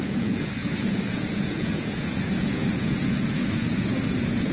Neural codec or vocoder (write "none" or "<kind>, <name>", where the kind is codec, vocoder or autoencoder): vocoder, Vocos